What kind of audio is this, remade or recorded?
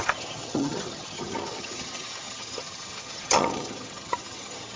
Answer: remade